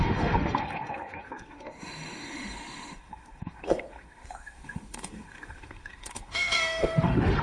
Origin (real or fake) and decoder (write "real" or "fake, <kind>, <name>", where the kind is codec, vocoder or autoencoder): fake, autoencoder, DAC-VAE